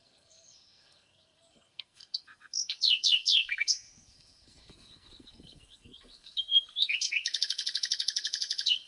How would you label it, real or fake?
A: fake